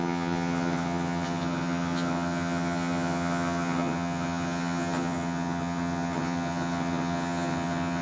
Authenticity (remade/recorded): remade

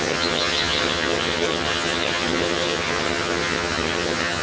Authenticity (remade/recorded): remade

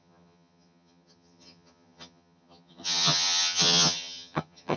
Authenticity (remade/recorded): remade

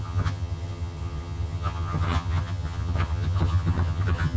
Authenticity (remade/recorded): remade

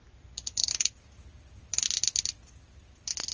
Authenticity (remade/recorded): recorded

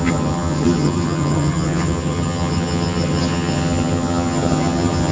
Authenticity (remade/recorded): remade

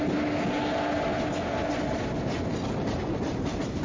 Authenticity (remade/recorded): recorded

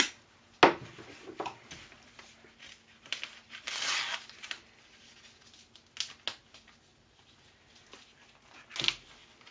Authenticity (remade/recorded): recorded